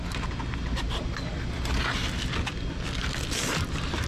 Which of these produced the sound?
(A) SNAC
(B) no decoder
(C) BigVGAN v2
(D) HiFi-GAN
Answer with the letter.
B